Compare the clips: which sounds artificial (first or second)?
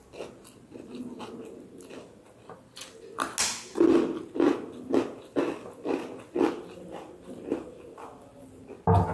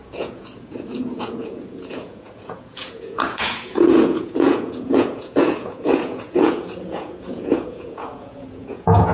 second